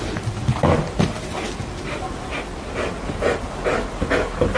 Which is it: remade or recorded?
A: recorded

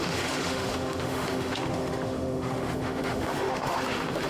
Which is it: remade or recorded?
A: remade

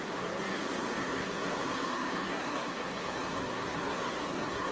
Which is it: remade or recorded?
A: remade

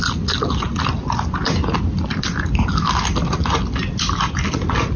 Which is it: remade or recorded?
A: recorded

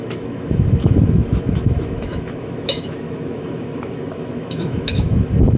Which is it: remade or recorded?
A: remade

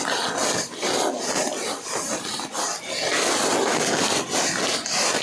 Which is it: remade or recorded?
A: recorded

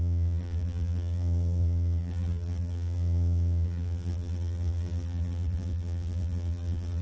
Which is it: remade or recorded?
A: remade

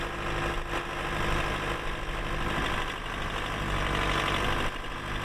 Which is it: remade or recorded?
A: recorded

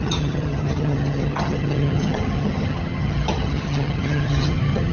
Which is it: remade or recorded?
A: remade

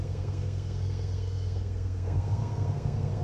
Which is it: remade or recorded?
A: remade